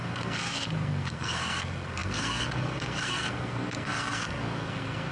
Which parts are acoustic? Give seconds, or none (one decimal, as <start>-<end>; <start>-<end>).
none

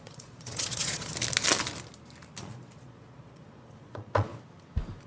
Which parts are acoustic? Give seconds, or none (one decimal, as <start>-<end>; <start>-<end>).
1.1-2.4; 4.3-5.1